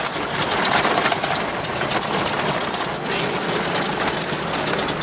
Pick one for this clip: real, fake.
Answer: real